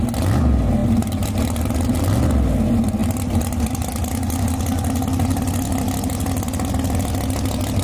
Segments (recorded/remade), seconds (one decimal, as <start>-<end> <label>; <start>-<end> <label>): 0.0-7.8 recorded